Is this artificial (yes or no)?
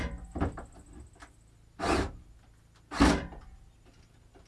no